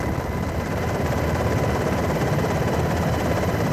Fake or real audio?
fake